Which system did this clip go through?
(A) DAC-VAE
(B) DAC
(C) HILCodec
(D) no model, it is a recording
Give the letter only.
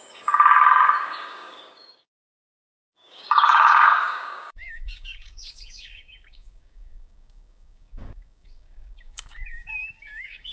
B